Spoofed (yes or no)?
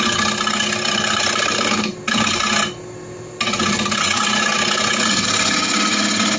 no